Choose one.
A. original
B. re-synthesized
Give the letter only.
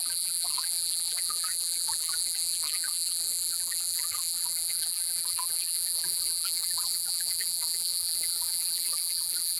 B